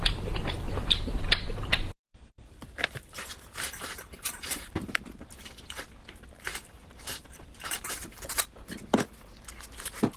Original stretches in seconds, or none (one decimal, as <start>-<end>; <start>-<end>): 8.9-9.4